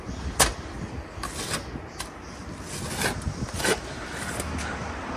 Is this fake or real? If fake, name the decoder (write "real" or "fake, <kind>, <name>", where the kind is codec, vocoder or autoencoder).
real